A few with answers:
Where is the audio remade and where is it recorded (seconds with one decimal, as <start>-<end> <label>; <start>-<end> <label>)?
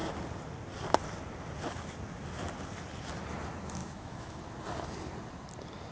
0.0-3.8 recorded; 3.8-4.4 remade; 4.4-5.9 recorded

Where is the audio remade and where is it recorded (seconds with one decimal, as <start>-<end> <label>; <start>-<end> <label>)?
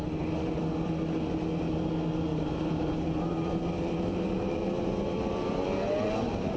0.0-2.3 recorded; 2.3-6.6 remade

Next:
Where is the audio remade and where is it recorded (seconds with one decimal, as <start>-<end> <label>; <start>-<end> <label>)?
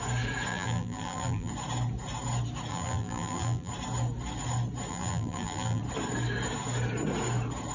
0.0-0.5 recorded; 0.5-1.5 remade; 1.5-2.7 recorded; 2.7-3.7 remade; 3.7-4.9 recorded; 4.9-5.8 remade; 5.8-7.7 recorded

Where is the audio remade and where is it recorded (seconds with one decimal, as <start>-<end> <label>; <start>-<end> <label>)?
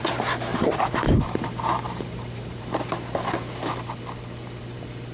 0.0-0.5 recorded; 0.5-2.6 remade; 2.6-5.1 recorded